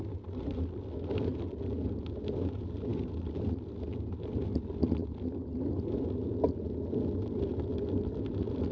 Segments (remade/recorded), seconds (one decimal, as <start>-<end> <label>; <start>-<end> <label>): 0.0-8.7 recorded